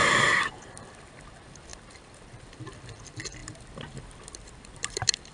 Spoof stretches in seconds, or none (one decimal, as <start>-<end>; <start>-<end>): 0.0-5.3